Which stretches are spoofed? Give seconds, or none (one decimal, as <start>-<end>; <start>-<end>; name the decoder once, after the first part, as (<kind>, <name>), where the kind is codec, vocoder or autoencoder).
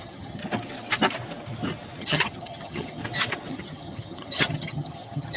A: 0.0-0.4 (vocoder, HiFi-GAN); 2.0-3.0; 3.5-5.4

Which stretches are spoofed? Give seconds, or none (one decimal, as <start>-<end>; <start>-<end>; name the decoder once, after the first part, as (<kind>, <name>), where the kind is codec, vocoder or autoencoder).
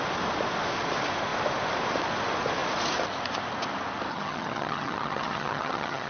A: 4.1-6.1 (vocoder, HiFi-GAN)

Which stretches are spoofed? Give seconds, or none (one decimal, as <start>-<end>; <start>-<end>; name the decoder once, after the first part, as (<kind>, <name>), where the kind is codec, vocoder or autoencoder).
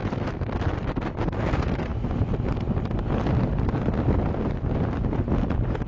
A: none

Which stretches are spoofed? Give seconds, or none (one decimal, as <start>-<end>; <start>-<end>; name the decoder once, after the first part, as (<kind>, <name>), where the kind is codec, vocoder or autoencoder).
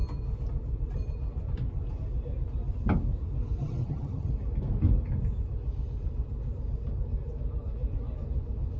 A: 3.6-4.3 (vocoder, HiFi-GAN)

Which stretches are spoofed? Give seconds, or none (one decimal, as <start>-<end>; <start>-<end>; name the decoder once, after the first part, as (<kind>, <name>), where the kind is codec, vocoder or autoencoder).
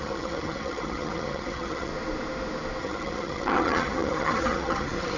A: 0.0-1.9 (vocoder, HiFi-GAN); 2.8-5.2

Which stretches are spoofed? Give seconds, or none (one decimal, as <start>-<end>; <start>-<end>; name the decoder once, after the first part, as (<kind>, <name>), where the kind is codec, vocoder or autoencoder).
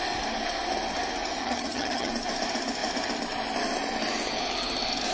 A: 1.4-2.1 (vocoder, HiFi-GAN)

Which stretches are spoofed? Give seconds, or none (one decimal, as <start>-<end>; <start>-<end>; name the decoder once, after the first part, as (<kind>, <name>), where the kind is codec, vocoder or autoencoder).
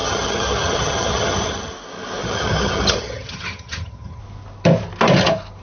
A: 0.0-1.7 (vocoder, HiFi-GAN); 2.2-4.2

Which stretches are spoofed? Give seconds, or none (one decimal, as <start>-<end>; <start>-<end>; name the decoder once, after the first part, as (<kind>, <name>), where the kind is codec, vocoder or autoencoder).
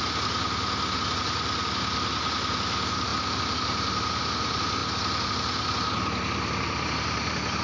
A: none